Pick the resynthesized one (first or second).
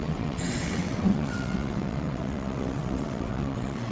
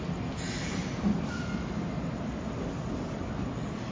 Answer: first